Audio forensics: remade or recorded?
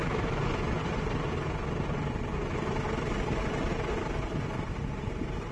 recorded